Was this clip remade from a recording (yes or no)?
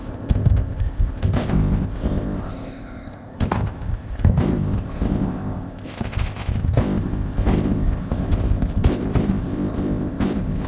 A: yes